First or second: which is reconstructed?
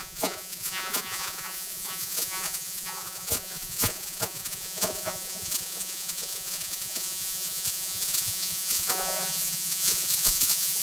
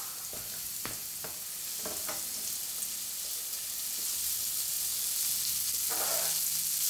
first